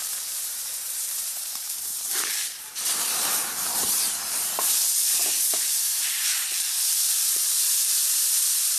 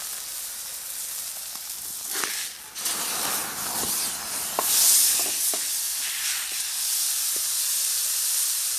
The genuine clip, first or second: second